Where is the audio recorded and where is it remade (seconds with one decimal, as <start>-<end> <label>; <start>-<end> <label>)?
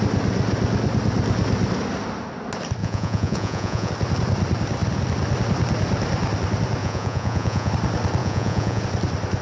0.0-2.8 recorded; 2.8-3.9 remade; 3.9-6.8 recorded; 6.8-7.7 remade; 7.7-8.2 recorded; 8.2-8.8 remade; 8.8-9.4 recorded